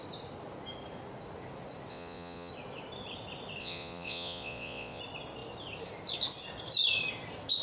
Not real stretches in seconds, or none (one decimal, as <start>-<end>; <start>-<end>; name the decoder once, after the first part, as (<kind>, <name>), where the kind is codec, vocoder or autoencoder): 1.9-2.5 (vocoder, Vocos); 3.6-5.0